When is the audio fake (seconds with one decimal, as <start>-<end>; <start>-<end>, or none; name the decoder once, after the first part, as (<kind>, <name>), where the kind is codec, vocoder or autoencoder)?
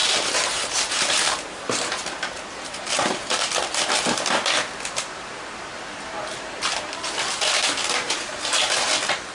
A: 0.0-3.5 (vocoder, BigVGAN v2); 5.9-8.9